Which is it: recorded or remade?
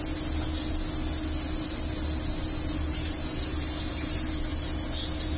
recorded